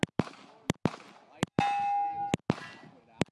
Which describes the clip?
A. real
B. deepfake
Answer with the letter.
A